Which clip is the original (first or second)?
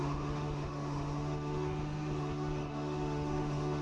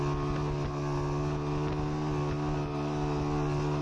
second